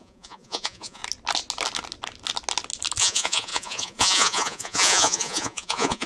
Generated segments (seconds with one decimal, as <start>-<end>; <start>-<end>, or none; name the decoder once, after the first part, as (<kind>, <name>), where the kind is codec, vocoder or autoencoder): 0.0-1.0 (vocoder, Vocos); 3.0-6.1